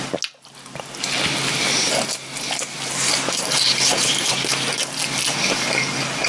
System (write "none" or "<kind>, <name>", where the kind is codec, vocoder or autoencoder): none